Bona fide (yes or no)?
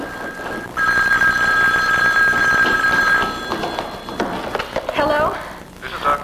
yes